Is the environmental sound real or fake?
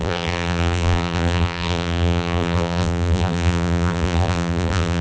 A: fake